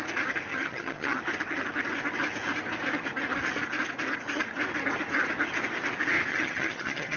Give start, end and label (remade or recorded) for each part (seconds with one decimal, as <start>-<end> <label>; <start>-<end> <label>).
0.0-0.5 recorded; 0.5-1.2 remade; 1.2-6.3 recorded; 6.3-7.2 remade